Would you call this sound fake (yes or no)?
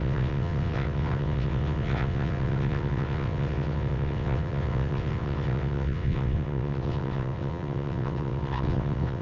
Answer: yes